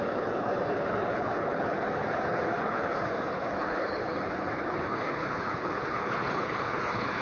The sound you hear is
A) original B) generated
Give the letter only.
B